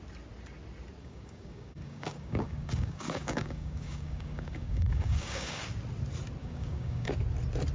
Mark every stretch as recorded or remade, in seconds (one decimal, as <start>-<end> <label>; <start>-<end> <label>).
0.0-1.0 recorded; 1.0-5.6 remade; 5.6-6.4 recorded; 6.4-7.1 remade; 7.1-7.7 recorded